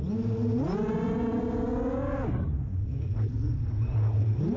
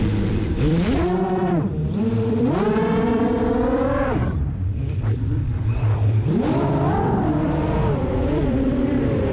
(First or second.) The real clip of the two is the first